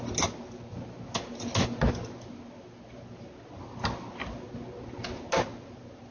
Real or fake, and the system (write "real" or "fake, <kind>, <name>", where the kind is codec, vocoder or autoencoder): real